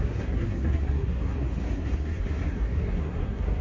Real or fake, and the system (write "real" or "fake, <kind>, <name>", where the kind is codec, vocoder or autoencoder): fake, codec, SNAC